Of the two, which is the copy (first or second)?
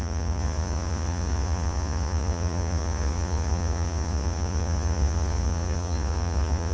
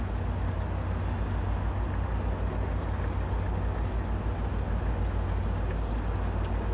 first